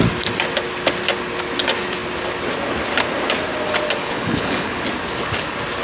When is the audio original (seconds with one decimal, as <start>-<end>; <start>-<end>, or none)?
0.0-4.0; 4.8-5.8